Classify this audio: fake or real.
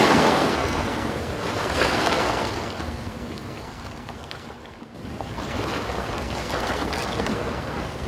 fake